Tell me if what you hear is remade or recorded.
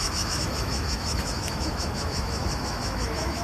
remade